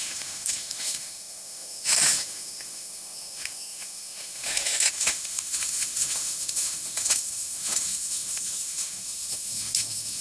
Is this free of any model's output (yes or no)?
no